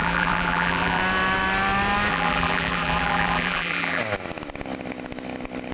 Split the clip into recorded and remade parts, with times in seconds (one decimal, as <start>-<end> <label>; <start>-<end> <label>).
0.0-1.0 remade; 1.0-2.1 recorded; 2.1-4.0 remade; 4.0-5.7 recorded